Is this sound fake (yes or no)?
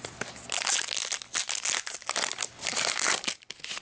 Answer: no